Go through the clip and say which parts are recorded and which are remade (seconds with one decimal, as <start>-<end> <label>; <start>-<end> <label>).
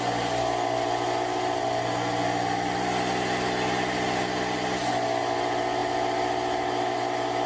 0.0-7.5 recorded